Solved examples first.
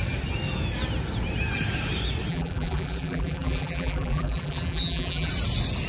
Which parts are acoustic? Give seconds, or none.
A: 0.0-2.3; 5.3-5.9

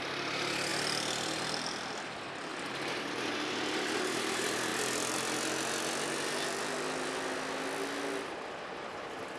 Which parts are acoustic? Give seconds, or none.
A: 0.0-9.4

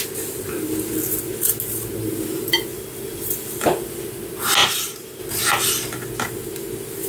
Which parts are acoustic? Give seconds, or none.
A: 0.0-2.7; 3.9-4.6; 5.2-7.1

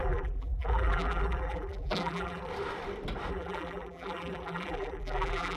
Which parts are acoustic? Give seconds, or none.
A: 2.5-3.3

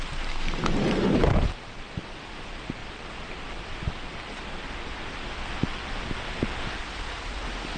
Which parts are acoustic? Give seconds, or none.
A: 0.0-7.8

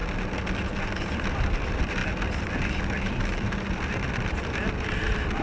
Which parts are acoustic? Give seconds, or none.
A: 0.0-1.1; 2.0-2.8